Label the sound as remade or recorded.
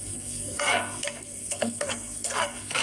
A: remade